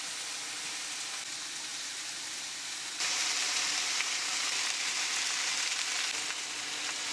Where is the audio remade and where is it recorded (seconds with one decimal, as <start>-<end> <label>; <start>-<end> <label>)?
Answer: 0.0-1.7 recorded; 1.7-6.0 remade; 6.0-7.1 recorded